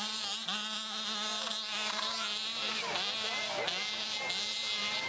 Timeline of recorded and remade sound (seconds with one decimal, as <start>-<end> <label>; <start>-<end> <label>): 0.0-5.1 recorded